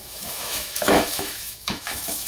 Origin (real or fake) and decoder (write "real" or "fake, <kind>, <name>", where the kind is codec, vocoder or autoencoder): fake, autoencoder, DAC-VAE